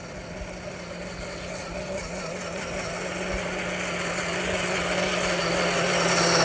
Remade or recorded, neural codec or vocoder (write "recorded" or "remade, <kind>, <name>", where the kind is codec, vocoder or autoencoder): recorded